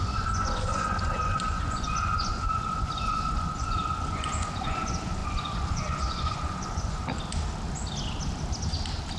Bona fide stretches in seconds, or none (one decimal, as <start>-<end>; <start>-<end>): 7.0-9.2